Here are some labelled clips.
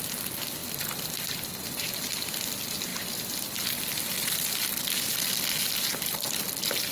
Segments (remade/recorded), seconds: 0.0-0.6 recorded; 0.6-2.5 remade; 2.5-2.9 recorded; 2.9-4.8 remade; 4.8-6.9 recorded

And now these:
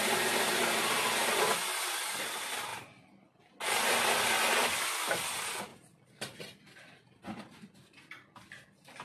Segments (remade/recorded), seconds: 0.0-9.0 recorded

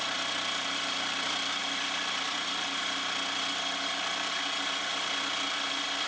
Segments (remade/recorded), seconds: 0.0-6.1 recorded

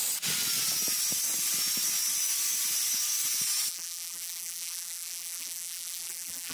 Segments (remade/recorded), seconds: 0.0-3.7 recorded; 3.7-6.5 remade